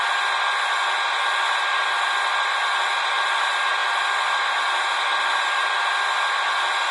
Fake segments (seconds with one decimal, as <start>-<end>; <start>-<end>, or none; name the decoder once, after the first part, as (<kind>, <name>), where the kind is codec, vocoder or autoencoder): 3.8-5.3 (vocoder, BigVGAN v2)